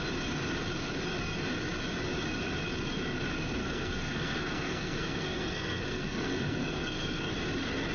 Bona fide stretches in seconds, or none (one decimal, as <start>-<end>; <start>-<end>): 0.0-3.6; 7.3-7.9